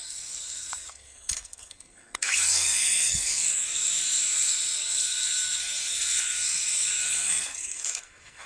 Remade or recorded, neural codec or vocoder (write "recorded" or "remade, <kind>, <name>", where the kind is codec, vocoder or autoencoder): remade, codec, SNAC